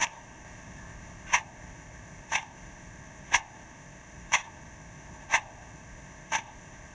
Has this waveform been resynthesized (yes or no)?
yes